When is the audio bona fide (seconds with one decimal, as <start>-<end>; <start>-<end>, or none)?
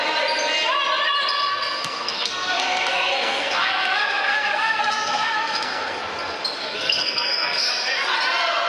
0.0-1.5; 6.0-6.6; 7.7-8.7